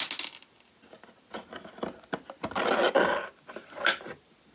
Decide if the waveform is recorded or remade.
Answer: recorded